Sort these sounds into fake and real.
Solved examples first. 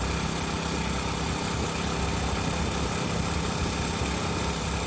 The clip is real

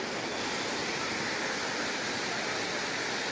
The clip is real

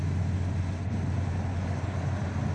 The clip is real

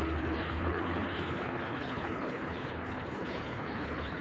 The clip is fake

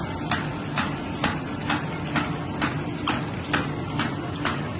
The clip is real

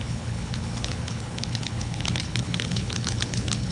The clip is fake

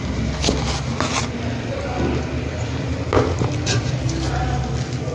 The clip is real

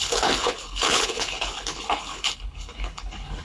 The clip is fake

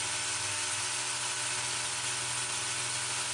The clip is real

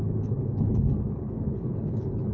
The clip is fake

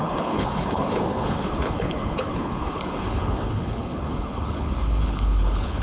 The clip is fake